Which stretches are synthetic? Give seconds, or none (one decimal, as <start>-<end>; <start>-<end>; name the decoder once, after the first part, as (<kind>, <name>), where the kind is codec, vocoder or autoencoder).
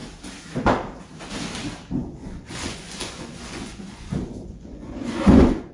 2.0-5.7 (vocoder, Vocos)